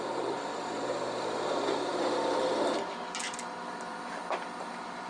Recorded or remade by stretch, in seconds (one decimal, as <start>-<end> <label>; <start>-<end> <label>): 0.0-1.9 remade; 1.9-5.1 recorded